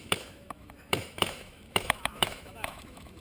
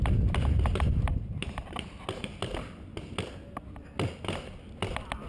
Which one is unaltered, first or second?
second